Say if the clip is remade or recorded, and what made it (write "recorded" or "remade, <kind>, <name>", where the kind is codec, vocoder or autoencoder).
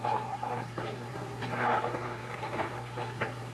remade, codec, SNAC